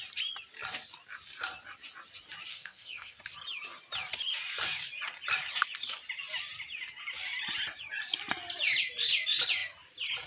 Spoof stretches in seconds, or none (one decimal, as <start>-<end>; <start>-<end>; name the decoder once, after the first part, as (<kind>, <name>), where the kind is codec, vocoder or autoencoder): 2.5-3.2 (codec, SNAC)